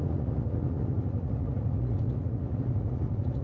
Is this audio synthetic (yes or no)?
yes